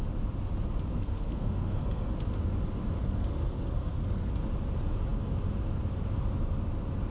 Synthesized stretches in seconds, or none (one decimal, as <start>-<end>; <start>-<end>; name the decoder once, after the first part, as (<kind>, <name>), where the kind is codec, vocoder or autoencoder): 0.9-2.1 (codec, SNAC); 3.0-4.3